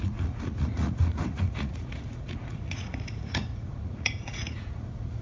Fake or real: fake